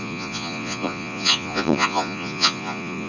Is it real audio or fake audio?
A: fake